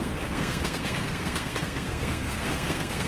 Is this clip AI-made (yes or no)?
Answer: yes